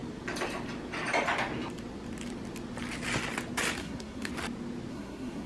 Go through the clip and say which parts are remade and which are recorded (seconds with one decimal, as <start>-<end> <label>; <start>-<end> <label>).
0.0-3.8 recorded; 3.8-4.3 remade; 4.3-4.9 recorded; 4.9-5.5 remade